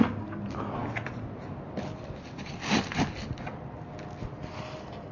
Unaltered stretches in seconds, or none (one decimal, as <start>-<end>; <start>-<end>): 0.0-5.1